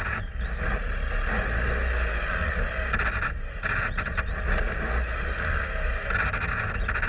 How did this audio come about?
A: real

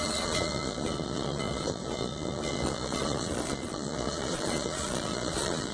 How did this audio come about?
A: fake